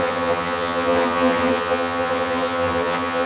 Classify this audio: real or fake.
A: fake